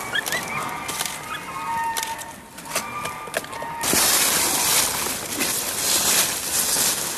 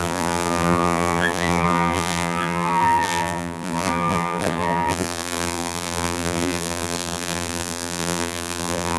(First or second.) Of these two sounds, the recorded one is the first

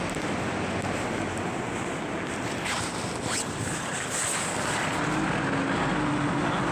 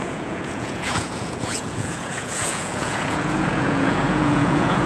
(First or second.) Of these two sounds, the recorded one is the first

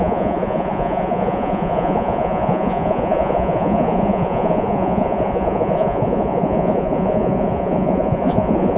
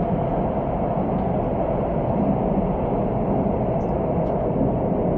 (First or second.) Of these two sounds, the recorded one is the second